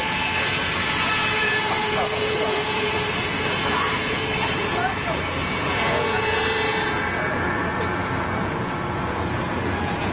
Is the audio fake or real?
fake